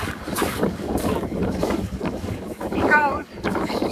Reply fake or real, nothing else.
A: fake